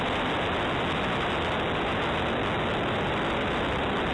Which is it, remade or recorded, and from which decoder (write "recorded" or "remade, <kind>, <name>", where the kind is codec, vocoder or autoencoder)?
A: recorded